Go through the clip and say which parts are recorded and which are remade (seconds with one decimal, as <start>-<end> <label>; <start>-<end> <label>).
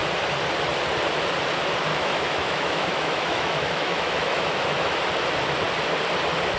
0.0-1.9 recorded; 1.9-5.0 remade; 5.0-6.6 recorded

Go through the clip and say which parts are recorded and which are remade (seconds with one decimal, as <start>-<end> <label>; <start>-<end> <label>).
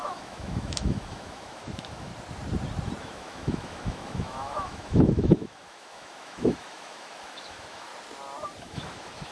0.0-2.1 remade; 2.1-3.0 recorded; 3.0-7.9 remade; 7.9-8.6 recorded; 8.6-9.3 remade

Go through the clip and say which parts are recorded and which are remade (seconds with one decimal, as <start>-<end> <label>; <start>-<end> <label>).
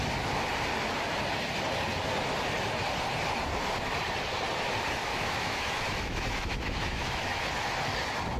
0.0-5.1 recorded; 5.1-7.5 remade; 7.5-8.4 recorded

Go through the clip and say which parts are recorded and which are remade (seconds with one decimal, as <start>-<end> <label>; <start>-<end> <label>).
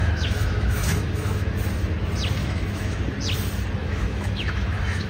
0.0-1.5 remade; 1.5-2.4 recorded; 2.4-3.0 remade; 3.0-3.8 recorded; 3.8-5.1 remade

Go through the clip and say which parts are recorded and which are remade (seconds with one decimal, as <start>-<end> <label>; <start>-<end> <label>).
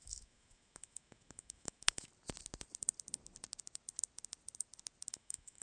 0.0-2.1 remade; 2.1-5.1 recorded; 5.1-5.6 remade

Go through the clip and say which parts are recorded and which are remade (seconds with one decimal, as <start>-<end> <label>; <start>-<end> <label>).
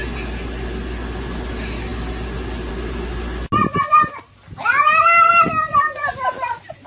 0.0-6.9 recorded